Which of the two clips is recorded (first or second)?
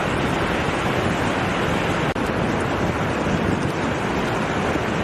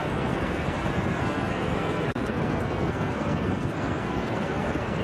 first